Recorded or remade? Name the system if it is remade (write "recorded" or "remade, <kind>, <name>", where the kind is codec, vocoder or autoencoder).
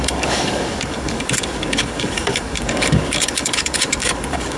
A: remade, codec, DAC